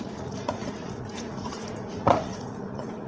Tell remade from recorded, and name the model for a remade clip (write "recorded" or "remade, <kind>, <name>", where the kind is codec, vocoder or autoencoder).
remade, vocoder, Vocos